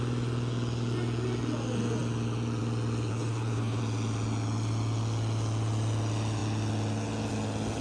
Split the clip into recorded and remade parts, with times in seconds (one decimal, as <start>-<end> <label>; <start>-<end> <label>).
0.0-3.1 recorded; 3.1-3.8 remade; 3.8-7.8 recorded